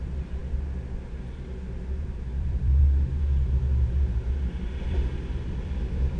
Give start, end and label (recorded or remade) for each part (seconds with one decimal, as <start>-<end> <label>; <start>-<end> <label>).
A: 0.0-0.4 remade; 0.4-2.0 recorded; 2.0-2.8 remade; 2.8-4.4 recorded; 4.4-6.2 remade